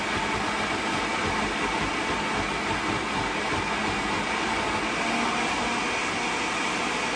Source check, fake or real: real